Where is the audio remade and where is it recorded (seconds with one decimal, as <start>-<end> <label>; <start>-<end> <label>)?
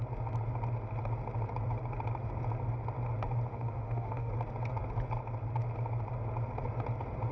0.0-3.5 recorded; 3.5-4.3 remade; 4.3-7.3 recorded